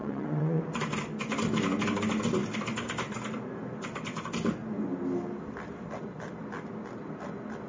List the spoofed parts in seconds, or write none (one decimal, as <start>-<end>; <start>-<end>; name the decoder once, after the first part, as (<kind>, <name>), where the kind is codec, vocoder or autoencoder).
0.0-0.6 (vocoder, WaveNeXt)